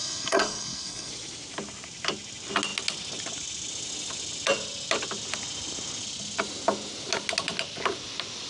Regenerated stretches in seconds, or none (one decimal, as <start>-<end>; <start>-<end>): 0.0-1.1